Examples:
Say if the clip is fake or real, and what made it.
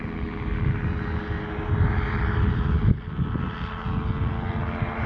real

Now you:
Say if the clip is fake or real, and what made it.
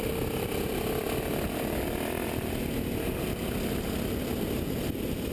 real